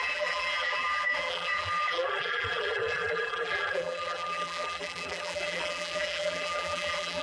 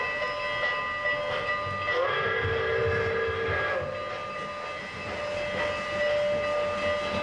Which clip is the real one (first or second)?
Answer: second